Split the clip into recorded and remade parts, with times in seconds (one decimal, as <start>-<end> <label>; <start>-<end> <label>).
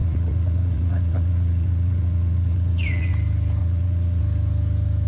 0.0-3.1 remade; 3.1-3.6 recorded; 3.6-4.2 remade; 4.2-5.1 recorded